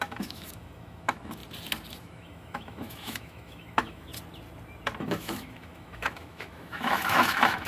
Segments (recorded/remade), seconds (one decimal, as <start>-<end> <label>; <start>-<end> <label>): 0.0-1.4 remade; 1.4-2.0 recorded; 2.0-4.1 remade; 4.1-5.0 recorded; 5.0-7.7 remade